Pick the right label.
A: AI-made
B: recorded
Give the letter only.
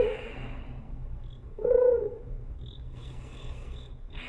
A